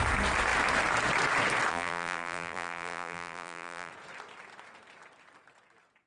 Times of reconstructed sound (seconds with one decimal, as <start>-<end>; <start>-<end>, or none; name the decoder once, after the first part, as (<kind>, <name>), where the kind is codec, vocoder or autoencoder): 1.7-3.9 (vocoder, BigVGAN v2)